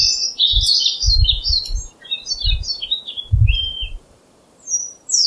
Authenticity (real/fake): fake